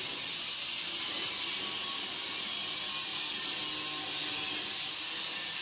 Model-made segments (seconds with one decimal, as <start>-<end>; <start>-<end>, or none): none